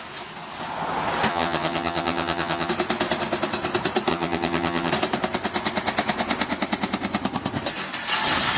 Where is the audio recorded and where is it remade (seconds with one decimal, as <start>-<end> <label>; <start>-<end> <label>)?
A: 0.0-1.3 recorded; 1.3-2.7 remade; 2.7-4.1 recorded; 4.1-4.9 remade; 4.9-8.6 recorded